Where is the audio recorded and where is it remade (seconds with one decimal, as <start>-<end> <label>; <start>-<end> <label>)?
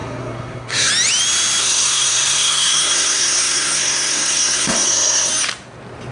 0.0-0.9 remade; 0.9-1.6 recorded; 1.6-5.3 remade; 5.3-6.1 recorded